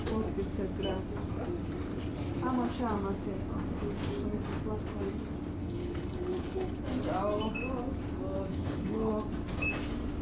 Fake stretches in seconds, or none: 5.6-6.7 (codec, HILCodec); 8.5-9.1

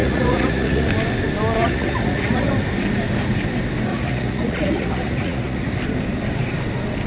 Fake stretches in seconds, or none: 0.0-0.9 (vocoder, Vocos); 1.6-2.5; 3.9-5.7

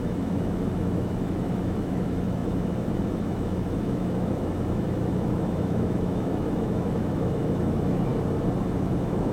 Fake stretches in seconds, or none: 0.0-8.1 (autoencoder, DAC-VAE); 8.8-9.3

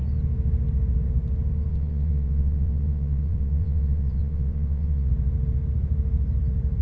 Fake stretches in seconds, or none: 1.7-5.1 (vocoder, WaveNeXt)

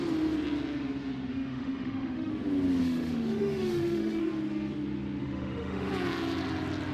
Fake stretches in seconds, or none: 1.3-2.3 (autoencoder, DAC-VAE); 2.8-4.2; 5.2-5.9

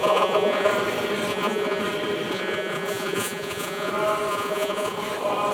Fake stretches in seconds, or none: 0.0-0.7 (vocoder, Vocos); 1.3-1.8; 2.3-3.9; 4.3-5.0